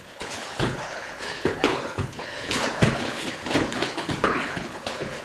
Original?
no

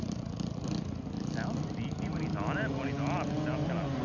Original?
yes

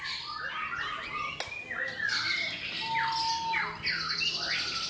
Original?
yes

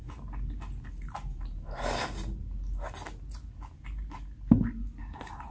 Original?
yes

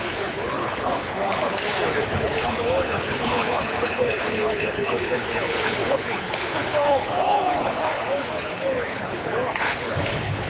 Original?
no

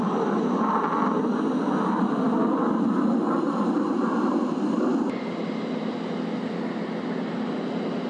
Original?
yes